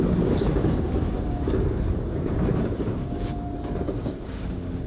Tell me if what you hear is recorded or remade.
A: remade